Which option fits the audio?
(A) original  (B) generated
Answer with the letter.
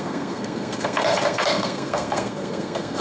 B